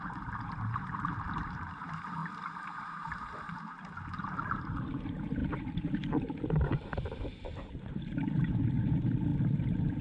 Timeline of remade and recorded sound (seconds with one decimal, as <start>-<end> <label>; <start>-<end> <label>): 0.0-2.2 remade; 2.2-2.7 recorded; 2.7-9.3 remade; 9.3-10.0 recorded